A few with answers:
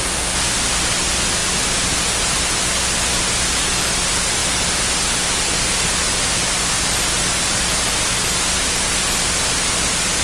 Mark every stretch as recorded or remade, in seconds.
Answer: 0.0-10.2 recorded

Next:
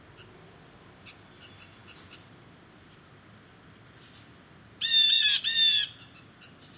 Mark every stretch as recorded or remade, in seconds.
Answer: 0.0-6.8 remade